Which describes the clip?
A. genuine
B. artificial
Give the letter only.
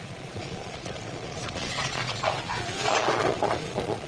B